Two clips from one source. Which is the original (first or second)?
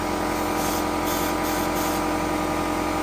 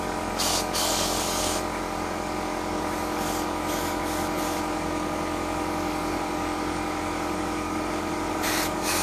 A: first